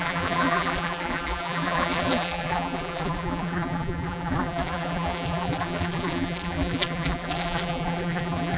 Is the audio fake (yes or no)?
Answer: yes